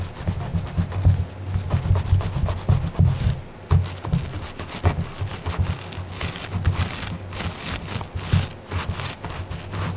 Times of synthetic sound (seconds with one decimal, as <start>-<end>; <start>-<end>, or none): none